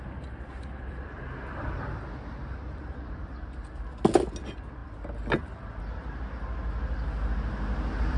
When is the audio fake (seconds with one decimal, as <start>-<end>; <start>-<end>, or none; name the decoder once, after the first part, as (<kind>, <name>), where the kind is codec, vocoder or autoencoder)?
none